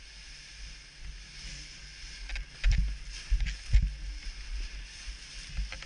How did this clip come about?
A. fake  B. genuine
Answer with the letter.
B